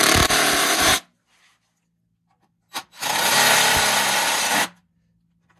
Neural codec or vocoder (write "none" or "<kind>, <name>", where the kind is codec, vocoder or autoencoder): none